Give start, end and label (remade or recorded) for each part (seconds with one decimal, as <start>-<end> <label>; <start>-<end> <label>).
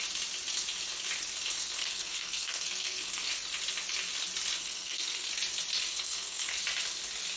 0.0-1.8 recorded; 1.8-3.3 remade; 3.3-4.6 recorded; 4.6-5.3 remade; 5.3-5.9 recorded; 5.9-6.6 remade; 6.6-7.4 recorded